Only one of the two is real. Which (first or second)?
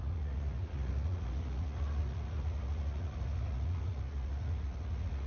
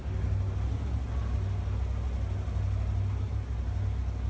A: second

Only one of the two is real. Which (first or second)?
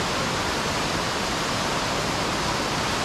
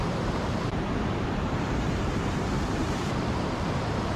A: first